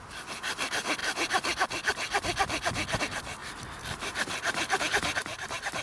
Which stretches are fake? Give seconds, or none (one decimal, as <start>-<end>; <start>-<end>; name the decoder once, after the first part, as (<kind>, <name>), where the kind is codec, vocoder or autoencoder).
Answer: 1.0-3.0 (vocoder, BigVGAN v2); 3.4-4.8